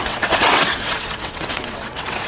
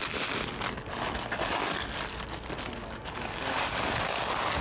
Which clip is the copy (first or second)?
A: first